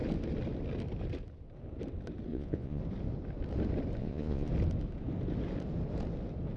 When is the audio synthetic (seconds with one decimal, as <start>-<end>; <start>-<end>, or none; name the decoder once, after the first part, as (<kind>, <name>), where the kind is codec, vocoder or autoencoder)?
2.3-2.8 (vocoder, Vocos); 4.0-4.5